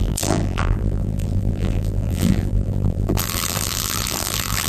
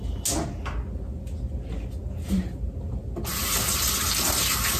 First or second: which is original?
second